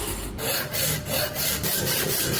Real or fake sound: real